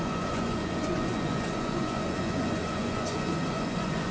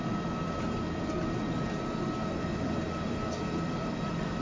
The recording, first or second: second